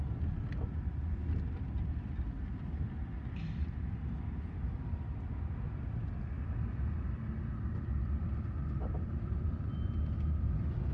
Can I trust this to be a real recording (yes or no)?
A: yes